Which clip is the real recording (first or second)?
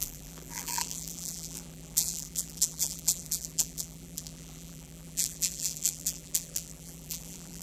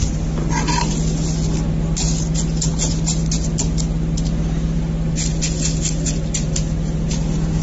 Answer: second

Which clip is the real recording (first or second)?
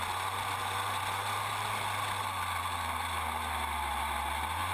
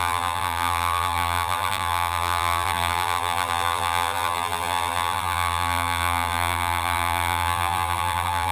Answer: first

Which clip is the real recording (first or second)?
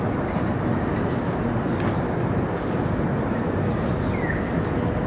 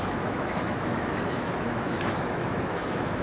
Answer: first